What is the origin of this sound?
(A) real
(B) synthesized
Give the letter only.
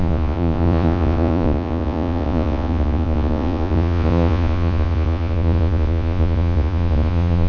B